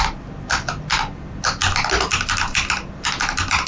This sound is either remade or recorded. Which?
recorded